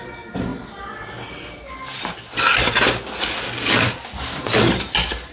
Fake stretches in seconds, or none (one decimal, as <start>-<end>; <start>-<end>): none